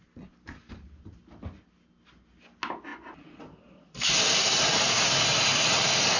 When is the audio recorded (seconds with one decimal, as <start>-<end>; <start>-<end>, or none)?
0.0-6.2